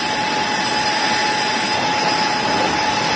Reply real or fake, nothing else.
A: real